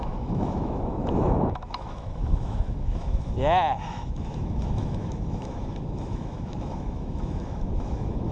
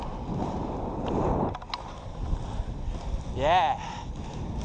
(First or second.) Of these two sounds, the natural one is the second